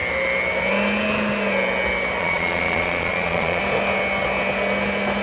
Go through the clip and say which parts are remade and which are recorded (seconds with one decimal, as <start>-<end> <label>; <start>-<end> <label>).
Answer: 0.0-2.2 recorded; 2.2-3.6 remade; 3.6-5.2 recorded